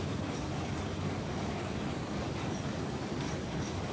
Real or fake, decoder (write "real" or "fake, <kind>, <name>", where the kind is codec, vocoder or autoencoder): fake, codec, DAC